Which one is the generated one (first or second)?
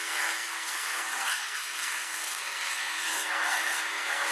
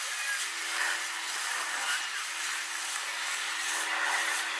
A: first